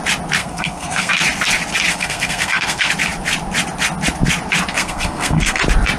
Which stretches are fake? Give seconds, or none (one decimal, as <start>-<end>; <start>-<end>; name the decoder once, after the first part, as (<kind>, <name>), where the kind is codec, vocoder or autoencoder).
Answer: 0.4-1.1 (codec, SNAC); 1.9-2.9; 4.7-5.6